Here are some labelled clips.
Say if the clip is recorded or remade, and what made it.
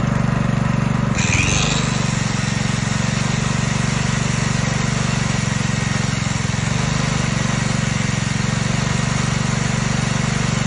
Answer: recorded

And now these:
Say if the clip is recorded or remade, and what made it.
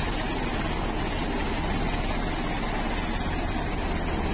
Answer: recorded